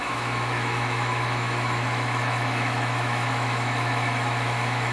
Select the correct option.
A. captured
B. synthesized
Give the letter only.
B